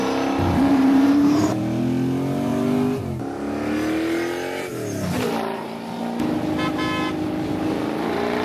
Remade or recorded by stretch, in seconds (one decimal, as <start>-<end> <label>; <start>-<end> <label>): 0.0-0.7 recorded; 0.7-1.6 remade; 1.6-8.4 recorded